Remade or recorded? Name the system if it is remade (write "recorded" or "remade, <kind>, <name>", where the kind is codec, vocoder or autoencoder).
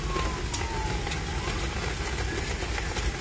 recorded